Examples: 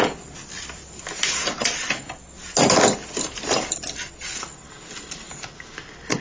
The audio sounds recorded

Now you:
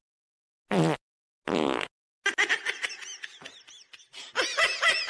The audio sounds recorded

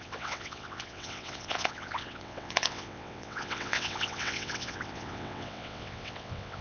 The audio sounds remade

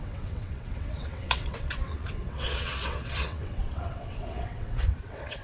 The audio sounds remade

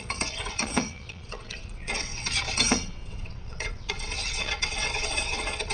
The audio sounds remade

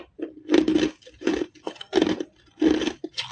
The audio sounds recorded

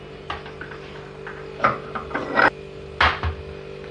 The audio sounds recorded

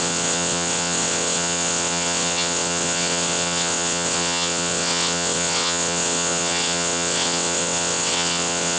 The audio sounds remade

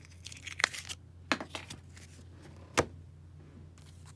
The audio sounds recorded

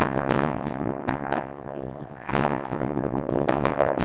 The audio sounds remade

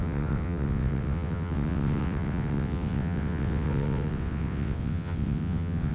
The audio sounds remade